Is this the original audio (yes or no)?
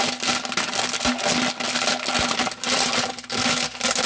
yes